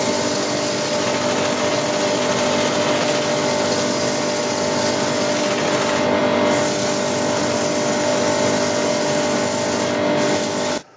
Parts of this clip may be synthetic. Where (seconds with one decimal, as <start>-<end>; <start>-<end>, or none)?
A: none

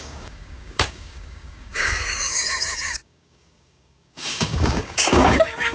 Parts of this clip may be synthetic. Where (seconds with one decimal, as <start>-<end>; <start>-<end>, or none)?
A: 0.0-5.7

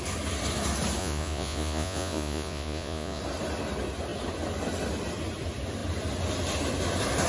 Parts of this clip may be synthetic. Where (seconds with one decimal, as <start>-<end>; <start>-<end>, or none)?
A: 1.0-3.2

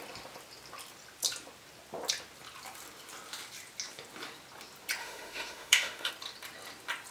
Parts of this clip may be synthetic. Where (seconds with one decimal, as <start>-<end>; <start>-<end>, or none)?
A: 5.0-6.1

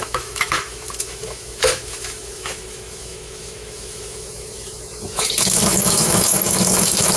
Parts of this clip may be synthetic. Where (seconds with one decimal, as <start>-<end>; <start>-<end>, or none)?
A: 0.0-7.2